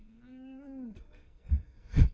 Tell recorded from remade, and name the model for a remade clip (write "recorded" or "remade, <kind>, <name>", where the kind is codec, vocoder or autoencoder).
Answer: remade, codec, SNAC